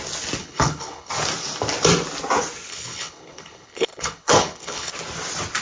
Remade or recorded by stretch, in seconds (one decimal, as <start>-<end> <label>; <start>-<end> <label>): 0.0-0.4 recorded; 0.4-1.1 remade; 1.1-2.7 recorded; 2.7-4.9 remade; 4.9-5.6 recorded